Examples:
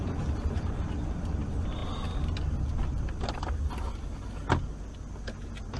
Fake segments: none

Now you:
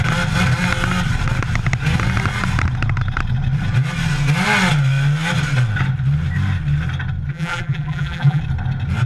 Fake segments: 7.3-8.4 (vocoder, BigVGAN v2)